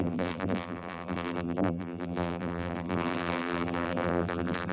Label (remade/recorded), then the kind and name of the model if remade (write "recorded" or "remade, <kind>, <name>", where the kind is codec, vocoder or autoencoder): remade, vocoder, BigVGAN v2